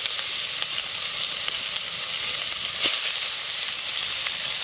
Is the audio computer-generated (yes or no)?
no